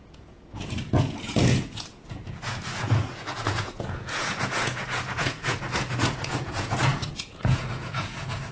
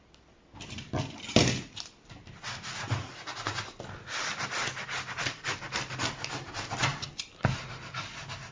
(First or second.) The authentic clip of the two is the second